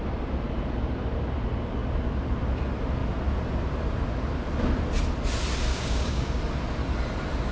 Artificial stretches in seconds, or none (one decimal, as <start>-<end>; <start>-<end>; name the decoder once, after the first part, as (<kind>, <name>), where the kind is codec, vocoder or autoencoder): 5.7-6.4 (codec, DAC)